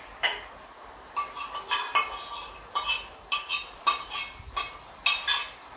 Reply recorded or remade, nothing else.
recorded